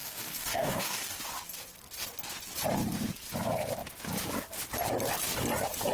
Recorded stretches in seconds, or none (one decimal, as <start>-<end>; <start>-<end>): 1.2-5.9